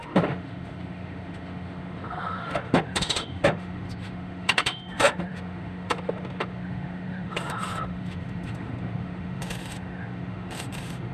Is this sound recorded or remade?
remade